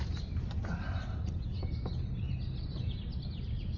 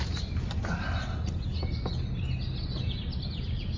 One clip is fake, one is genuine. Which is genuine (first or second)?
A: second